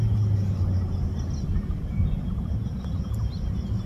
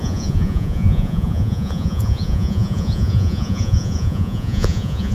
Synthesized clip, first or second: second